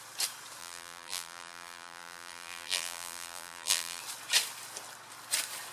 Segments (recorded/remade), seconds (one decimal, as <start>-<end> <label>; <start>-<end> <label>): 0.0-0.6 recorded; 0.6-4.0 remade; 4.0-5.7 recorded